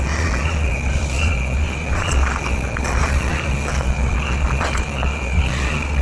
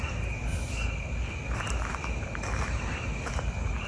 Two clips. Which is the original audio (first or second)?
second